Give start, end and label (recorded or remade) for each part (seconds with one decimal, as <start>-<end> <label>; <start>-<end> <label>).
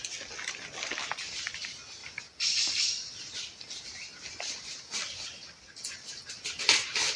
0.0-2.0 recorded; 2.0-6.2 remade; 6.2-7.2 recorded